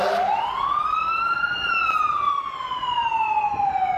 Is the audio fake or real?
real